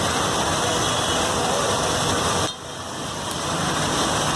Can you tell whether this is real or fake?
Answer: real